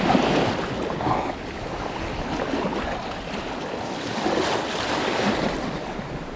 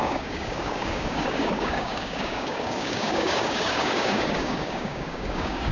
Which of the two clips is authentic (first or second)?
first